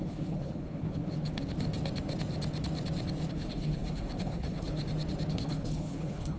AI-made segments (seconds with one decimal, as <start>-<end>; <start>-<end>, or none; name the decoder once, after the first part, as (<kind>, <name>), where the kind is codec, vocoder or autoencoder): 0.0-1.0 (codec, HILCodec); 3.3-4.8; 5.3-6.4